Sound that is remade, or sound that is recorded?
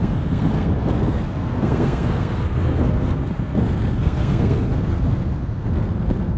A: remade